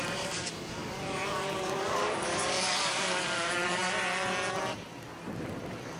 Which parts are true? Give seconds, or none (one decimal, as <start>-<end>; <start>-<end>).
3.8-6.0